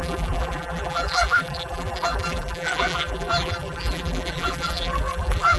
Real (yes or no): no